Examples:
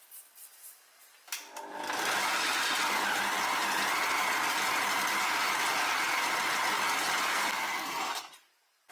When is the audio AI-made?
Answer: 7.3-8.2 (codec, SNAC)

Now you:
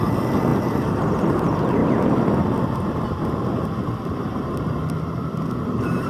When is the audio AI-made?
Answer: none

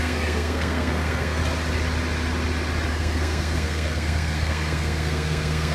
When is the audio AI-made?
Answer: 0.0-1.4 (codec, SNAC); 2.9-5.7

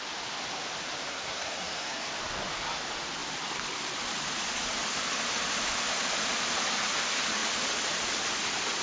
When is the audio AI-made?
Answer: 1.1-2.1 (codec, SNAC)